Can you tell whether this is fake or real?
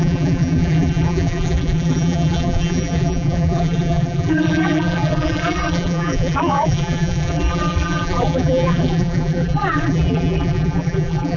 fake